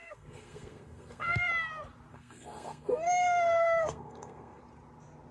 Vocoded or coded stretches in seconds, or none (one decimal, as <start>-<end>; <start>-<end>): 0.0-1.5; 2.1-4.6

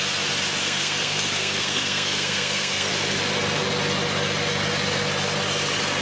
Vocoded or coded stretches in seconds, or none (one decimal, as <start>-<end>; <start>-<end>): 0.6-2.9

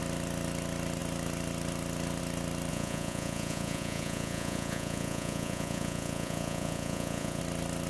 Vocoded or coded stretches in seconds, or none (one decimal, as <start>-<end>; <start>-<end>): 2.7-7.4

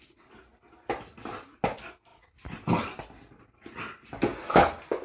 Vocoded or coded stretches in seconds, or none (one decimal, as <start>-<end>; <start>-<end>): none

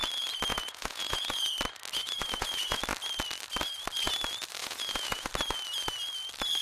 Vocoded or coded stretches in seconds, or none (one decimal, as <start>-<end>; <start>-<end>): 0.5-1.5; 2.0-2.8; 4.6-5.3